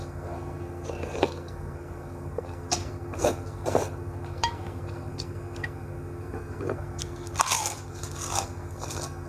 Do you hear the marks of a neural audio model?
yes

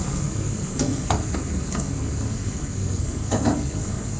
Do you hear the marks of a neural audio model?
yes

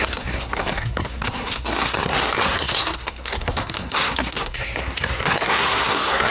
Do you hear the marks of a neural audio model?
yes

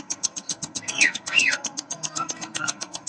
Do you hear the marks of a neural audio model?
yes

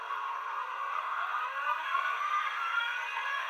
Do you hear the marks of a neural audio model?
yes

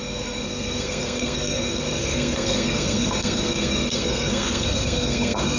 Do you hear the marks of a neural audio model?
yes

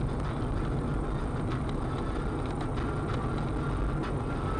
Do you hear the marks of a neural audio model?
no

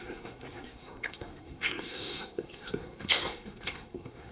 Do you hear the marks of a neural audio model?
yes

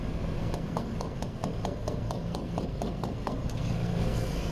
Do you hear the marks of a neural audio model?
yes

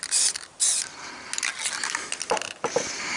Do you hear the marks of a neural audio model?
no